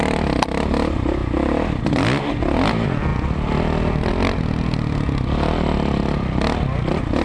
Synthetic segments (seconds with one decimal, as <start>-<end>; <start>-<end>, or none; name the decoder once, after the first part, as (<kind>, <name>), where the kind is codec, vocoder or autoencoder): none